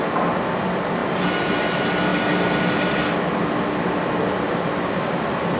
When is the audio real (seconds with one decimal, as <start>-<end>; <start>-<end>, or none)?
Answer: 0.0-5.6